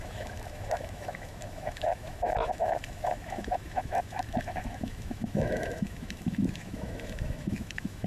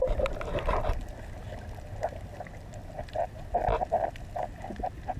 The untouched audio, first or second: second